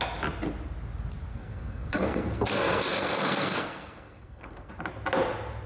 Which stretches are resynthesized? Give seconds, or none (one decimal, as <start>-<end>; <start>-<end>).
1.3-4.7